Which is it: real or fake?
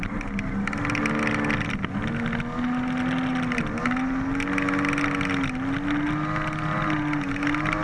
real